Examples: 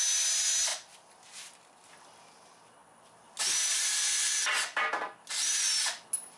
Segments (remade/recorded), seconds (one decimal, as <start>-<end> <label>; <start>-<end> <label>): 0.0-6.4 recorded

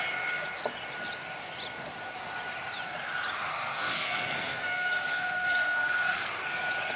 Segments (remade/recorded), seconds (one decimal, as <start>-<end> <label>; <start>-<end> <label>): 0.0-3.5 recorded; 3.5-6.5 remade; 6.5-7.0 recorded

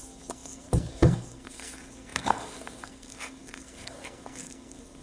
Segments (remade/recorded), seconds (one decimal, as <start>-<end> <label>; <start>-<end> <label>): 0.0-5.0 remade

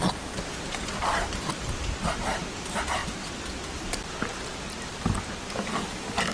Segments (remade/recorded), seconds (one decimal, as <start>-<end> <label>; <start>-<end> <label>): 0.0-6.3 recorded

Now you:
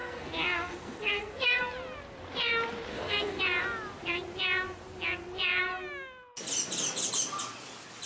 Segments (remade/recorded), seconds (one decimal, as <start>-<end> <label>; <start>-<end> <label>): 0.0-1.6 remade; 1.6-2.9 recorded; 2.9-3.4 remade; 3.4-8.1 recorded